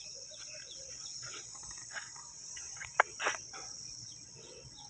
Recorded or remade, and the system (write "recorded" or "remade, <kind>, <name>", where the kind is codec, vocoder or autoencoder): remade, vocoder, WaveNeXt